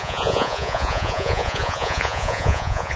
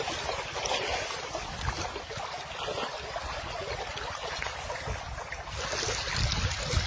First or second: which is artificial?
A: first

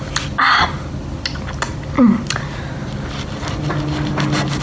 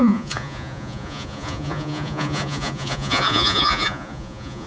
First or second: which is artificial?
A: second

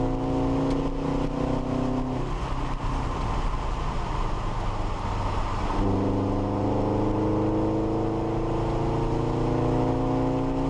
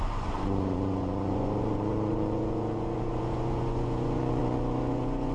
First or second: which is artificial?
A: second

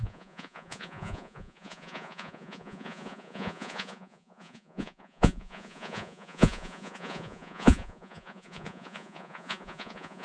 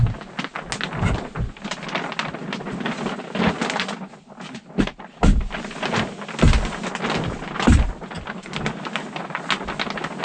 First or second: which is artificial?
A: first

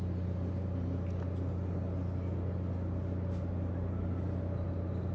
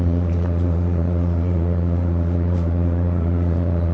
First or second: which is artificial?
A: second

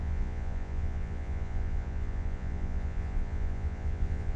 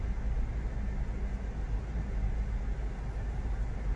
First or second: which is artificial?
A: first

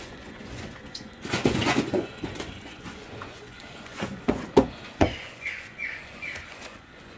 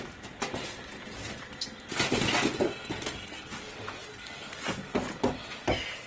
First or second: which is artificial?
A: first